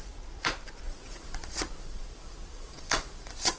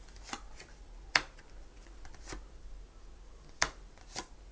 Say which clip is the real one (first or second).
second